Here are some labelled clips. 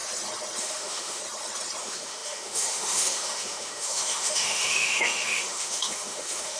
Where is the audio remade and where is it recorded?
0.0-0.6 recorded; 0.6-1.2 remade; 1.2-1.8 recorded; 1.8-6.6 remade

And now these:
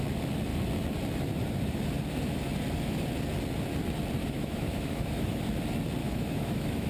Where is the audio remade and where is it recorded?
0.0-4.2 recorded; 4.2-5.4 remade; 5.4-6.0 recorded; 6.0-6.9 remade

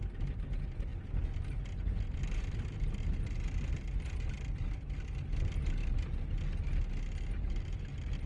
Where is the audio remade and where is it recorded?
0.0-8.3 recorded

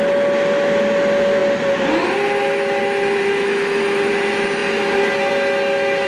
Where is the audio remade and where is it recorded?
0.0-3.2 recorded; 3.2-4.1 remade; 4.1-6.1 recorded

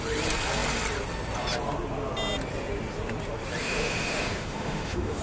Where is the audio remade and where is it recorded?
0.0-3.6 recorded; 3.6-5.2 remade